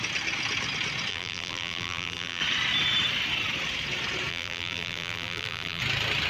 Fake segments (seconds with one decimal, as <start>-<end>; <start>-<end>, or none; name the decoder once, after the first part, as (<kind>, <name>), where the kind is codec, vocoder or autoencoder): 1.1-2.4 (vocoder, BigVGAN v2); 4.3-5.8